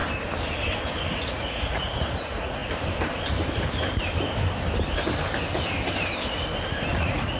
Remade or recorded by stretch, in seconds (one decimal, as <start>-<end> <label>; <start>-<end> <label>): 0.0-1.1 recorded; 1.1-2.6 remade; 2.6-7.0 recorded; 7.0-7.4 remade